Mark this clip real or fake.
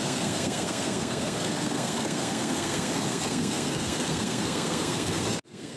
fake